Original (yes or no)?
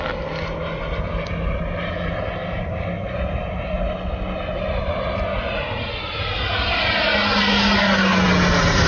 yes